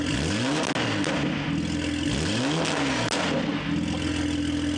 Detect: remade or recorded recorded